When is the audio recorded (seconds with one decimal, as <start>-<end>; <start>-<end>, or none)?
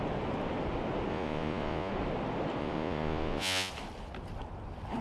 0.0-1.1; 1.9-2.6; 3.7-5.0